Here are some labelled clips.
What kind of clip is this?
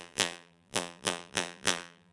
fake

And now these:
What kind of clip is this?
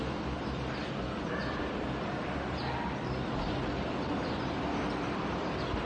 fake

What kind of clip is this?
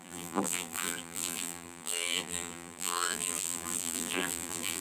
fake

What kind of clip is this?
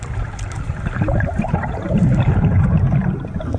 fake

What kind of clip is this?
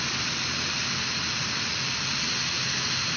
real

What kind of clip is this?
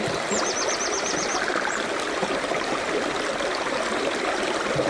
fake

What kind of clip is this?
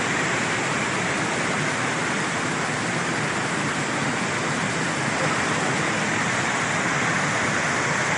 real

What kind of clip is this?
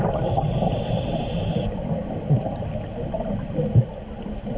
fake